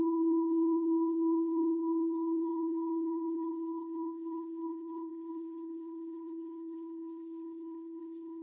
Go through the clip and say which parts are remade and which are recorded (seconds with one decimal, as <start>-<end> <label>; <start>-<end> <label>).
0.0-8.4 remade